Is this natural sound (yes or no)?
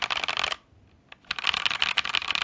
yes